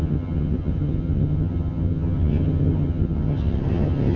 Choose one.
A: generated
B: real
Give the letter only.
A